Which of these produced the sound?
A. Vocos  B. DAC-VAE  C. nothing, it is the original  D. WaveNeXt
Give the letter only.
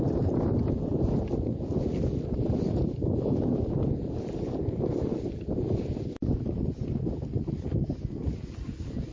C